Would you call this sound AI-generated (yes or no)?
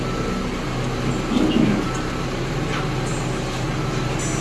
no